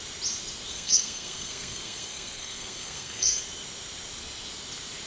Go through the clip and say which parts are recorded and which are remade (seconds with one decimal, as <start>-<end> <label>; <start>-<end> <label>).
0.0-0.7 recorded; 0.7-3.4 remade; 3.4-5.1 recorded

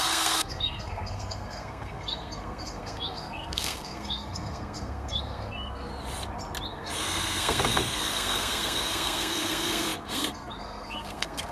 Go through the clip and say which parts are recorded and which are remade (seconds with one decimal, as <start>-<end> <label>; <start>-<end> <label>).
0.0-5.9 remade; 5.9-6.7 recorded; 6.7-11.5 remade

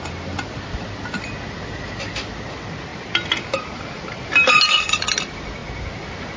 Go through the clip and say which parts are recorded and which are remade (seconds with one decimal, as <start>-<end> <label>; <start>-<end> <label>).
0.0-6.4 recorded

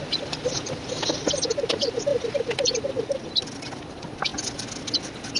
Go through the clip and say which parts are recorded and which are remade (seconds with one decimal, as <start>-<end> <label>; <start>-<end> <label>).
0.0-5.4 recorded